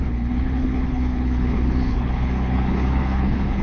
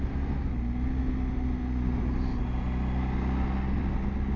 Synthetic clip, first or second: first